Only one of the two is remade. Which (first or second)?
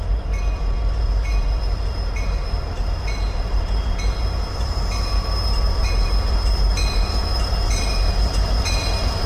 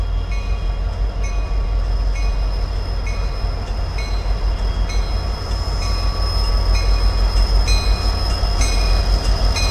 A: first